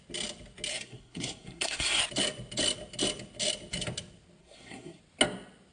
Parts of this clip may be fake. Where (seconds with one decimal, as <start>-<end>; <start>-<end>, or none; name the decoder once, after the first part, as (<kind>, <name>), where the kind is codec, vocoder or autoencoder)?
0.7-2.0 (codec, SNAC); 4.4-5.0